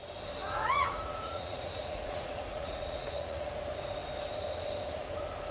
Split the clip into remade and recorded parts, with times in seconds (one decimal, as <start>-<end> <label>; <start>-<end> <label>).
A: 0.0-0.4 recorded; 0.4-3.5 remade; 3.5-5.5 recorded